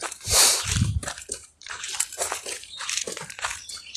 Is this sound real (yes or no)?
no